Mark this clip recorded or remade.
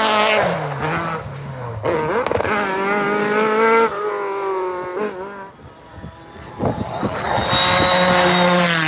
recorded